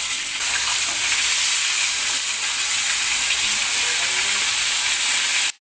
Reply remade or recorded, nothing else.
recorded